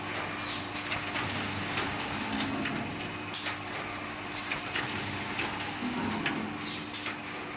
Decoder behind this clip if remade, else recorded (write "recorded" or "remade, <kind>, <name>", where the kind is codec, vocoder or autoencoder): recorded